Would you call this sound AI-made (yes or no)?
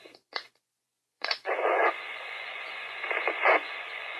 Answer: yes